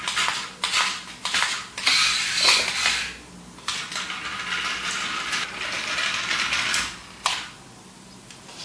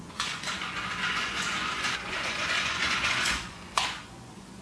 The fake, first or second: second